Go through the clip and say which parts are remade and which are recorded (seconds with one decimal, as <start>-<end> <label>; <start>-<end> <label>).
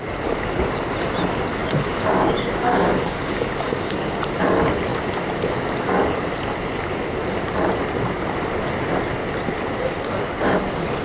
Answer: 0.0-1.6 recorded; 1.6-4.2 remade; 4.2-11.0 recorded